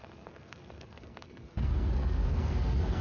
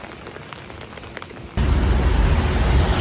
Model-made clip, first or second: first